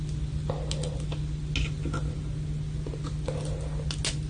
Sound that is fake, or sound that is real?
real